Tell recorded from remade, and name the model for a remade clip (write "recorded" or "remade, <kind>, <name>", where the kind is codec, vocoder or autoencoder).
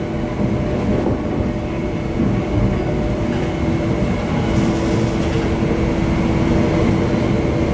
recorded